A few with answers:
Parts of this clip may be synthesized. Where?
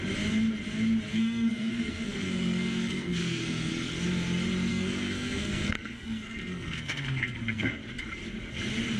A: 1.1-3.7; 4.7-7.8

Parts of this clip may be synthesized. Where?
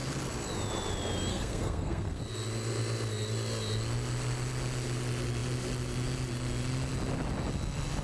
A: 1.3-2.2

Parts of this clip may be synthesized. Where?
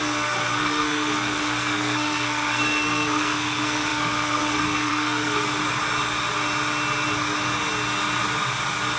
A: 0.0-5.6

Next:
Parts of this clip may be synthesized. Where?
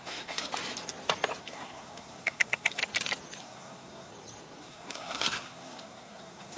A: 0.0-0.5; 1.4-2.8; 3.4-4.1; 4.6-6.6